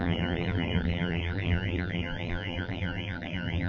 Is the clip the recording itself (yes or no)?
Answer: no